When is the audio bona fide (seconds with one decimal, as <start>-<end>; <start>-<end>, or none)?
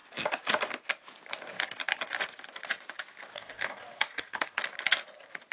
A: 0.0-3.3; 4.6-5.5